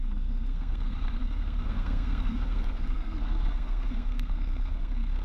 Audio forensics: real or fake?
fake